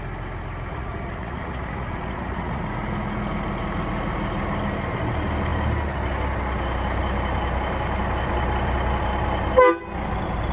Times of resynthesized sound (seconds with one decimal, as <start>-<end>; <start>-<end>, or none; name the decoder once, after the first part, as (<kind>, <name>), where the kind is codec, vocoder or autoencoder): 0.7-2.6 (vocoder, Vocos)